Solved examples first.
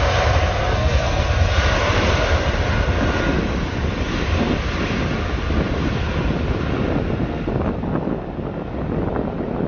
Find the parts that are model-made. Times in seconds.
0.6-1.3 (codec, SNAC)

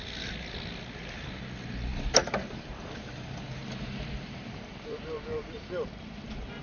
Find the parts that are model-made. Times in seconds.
1.9-5.9 (vocoder, BigVGAN v2)

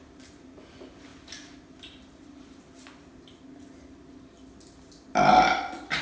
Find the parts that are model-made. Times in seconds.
none

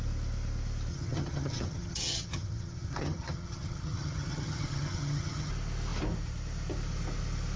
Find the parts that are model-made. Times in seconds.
0.9-5.5 (vocoder, HiFi-GAN)

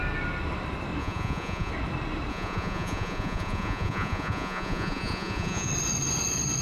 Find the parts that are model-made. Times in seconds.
1.0-1.7 (vocoder, Vocos); 2.3-5.7

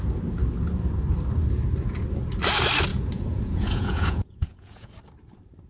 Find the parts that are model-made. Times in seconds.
2.9-4.9 (vocoder, Vocos)